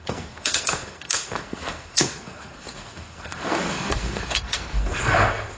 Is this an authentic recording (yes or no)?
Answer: no